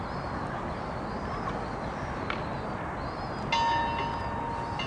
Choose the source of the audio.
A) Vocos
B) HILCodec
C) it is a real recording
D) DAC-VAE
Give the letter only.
C